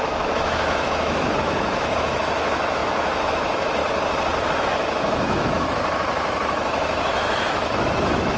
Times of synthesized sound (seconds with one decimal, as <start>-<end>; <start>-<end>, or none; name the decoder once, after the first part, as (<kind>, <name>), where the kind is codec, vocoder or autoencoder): 0.0-3.8 (autoencoder, DAC-VAE); 4.6-8.4